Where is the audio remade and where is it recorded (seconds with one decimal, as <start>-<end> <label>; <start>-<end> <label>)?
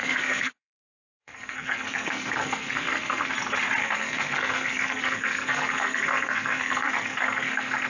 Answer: 0.0-3.3 remade; 3.3-3.8 recorded; 3.8-7.9 remade